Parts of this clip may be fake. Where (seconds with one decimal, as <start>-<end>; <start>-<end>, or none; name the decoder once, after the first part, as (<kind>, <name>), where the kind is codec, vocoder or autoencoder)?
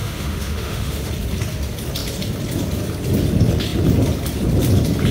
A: 0.0-1.1 (autoencoder, DAC-VAE)